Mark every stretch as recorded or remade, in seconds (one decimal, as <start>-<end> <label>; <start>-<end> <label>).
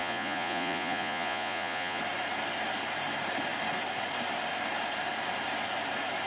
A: 0.0-2.0 remade; 2.0-6.3 recorded